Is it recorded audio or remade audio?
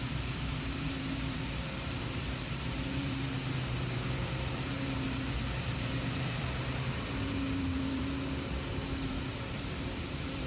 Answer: remade